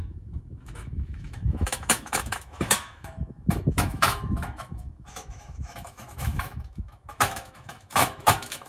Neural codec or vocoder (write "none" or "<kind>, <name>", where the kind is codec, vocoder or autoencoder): autoencoder, DAC-VAE